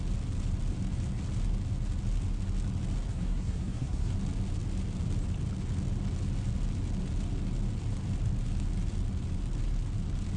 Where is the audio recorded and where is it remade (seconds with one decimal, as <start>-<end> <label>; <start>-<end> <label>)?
0.0-3.1 recorded; 3.1-4.1 remade; 4.1-10.4 recorded